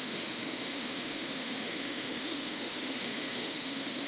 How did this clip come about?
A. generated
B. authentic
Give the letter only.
A